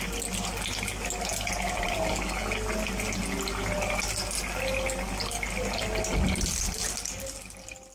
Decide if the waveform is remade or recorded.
recorded